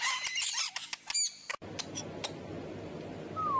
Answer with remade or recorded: recorded